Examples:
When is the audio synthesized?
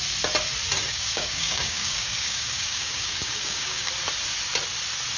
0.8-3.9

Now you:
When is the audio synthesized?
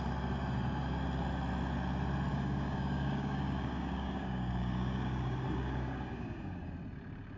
2.3-6.7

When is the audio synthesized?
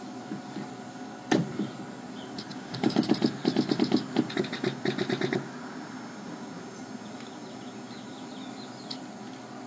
2.5-3.1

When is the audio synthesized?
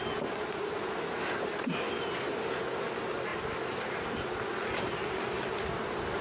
none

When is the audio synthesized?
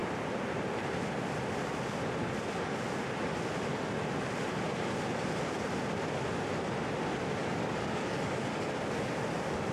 7.4-8.7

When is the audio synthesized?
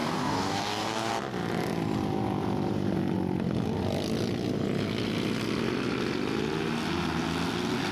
0.0-1.1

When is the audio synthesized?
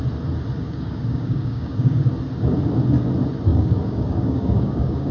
0.6-2.0; 3.5-5.1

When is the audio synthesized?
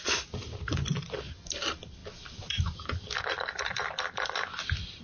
none